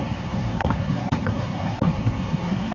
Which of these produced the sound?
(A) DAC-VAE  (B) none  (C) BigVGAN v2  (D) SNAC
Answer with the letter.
D